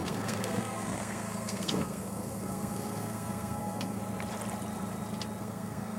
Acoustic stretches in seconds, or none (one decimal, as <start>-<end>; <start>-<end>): 4.0-5.4